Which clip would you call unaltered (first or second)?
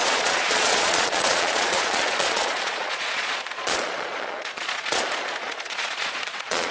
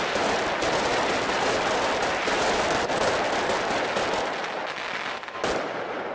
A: second